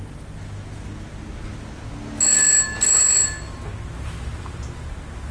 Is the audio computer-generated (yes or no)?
no